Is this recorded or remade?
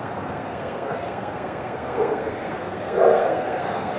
remade